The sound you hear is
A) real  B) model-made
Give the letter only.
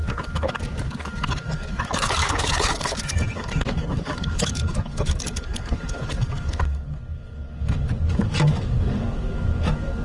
B